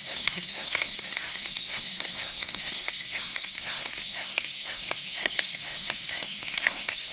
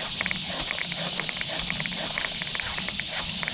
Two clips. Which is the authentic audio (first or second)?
second